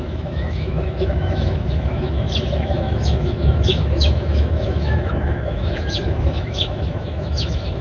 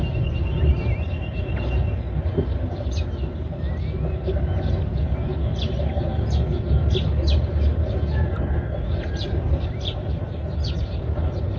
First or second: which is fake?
first